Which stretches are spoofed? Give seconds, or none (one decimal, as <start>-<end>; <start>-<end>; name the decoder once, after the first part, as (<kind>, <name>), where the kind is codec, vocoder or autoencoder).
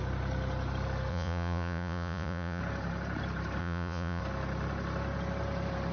1.1-2.6 (vocoder, Vocos); 3.6-4.2